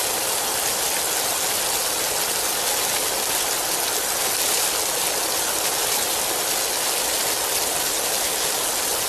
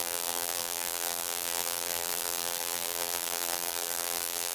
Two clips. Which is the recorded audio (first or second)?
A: first